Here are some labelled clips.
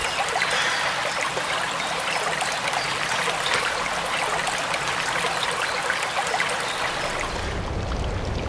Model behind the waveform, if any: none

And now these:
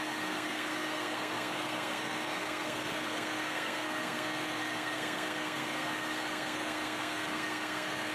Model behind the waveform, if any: codec, SNAC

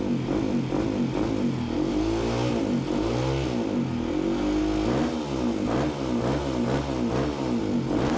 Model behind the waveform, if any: none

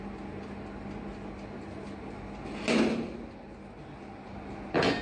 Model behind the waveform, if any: none